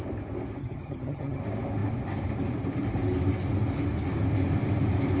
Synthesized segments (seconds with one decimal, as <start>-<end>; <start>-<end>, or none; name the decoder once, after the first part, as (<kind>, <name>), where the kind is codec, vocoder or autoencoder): 0.6-1.4 (vocoder, HiFi-GAN)

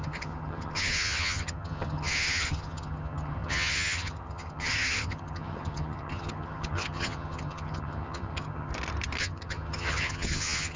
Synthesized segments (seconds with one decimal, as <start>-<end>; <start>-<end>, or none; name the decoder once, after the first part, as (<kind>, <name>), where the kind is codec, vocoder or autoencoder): 0.0-8.7 (vocoder, HiFi-GAN); 9.2-10.8

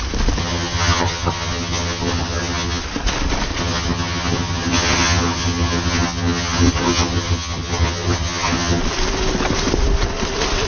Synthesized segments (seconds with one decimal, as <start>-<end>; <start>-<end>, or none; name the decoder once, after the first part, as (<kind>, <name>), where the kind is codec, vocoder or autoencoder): 0.4-2.8 (vocoder, HiFi-GAN); 3.6-8.8

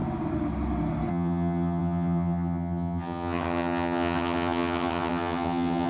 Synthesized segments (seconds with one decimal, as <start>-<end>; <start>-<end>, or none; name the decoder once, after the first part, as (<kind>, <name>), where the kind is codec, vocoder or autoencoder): 1.1-5.9 (vocoder, HiFi-GAN)